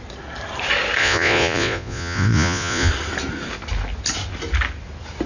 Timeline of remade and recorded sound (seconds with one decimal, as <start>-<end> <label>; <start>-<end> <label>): 0.0-1.0 recorded; 1.0-2.9 remade; 2.9-5.3 recorded